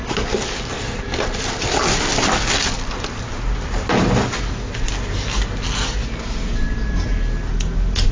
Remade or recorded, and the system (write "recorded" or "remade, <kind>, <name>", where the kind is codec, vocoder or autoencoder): recorded